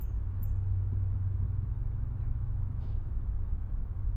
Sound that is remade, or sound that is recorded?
remade